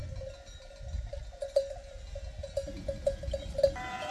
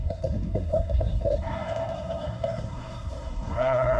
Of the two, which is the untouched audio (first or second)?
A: first